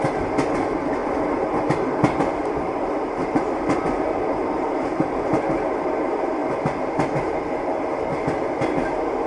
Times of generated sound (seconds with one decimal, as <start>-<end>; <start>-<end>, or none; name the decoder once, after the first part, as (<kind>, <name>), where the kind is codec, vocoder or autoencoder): 1.0-1.7 (vocoder, BigVGAN v2); 2.4-5.3